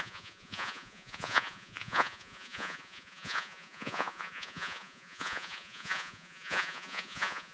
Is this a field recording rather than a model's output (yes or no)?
no